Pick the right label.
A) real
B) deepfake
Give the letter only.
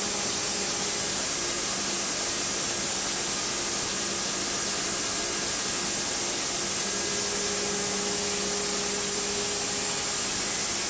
A